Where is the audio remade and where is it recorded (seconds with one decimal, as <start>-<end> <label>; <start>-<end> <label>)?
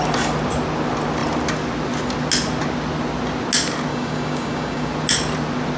0.0-3.9 recorded; 3.9-4.9 remade; 4.9-5.8 recorded